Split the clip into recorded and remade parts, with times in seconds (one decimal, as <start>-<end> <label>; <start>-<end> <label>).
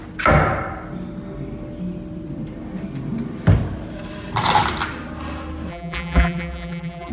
0.0-5.7 recorded; 5.7-7.1 remade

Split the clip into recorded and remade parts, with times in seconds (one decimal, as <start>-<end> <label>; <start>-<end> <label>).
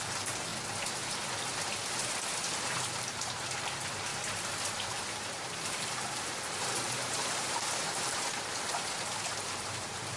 0.0-0.5 remade; 0.5-2.5 recorded; 2.5-4.1 remade; 4.1-4.9 recorded; 4.9-10.2 remade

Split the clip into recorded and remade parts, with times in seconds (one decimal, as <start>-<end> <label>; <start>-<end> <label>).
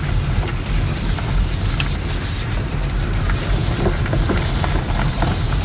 0.0-5.6 recorded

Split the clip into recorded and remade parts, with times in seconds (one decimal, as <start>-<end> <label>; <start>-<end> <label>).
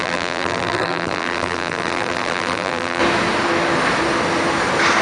0.0-3.0 remade; 3.0-5.0 recorded